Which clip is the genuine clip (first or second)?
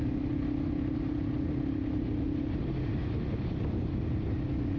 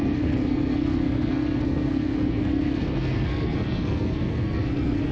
first